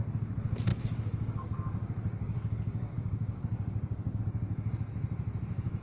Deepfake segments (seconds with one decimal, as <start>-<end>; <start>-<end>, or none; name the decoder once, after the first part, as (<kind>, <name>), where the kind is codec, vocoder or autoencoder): 0.7-4.2 (codec, DAC)